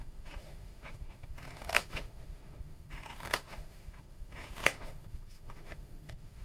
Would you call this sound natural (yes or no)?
no